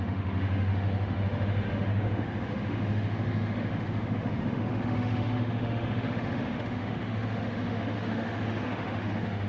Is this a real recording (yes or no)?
no